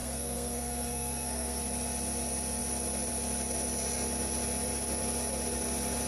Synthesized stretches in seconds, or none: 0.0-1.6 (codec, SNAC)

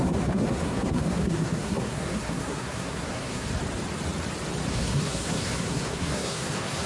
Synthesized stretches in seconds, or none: 0.0-3.5 (codec, SNAC); 4.7-6.9

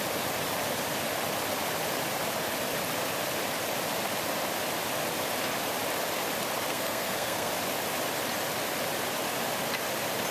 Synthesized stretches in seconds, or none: 6.7-7.5 (codec, SNAC)

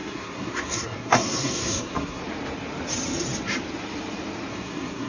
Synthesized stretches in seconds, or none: 0.0-2.2 (codec, SNAC); 4.5-5.1

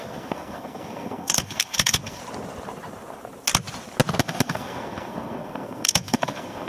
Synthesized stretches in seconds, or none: 0.0-2.2 (codec, SNAC); 4.2-6.7